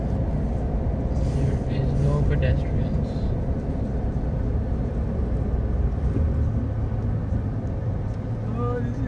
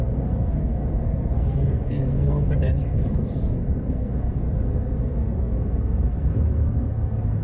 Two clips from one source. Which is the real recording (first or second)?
first